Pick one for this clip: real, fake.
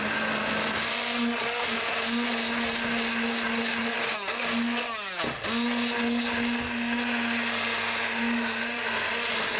real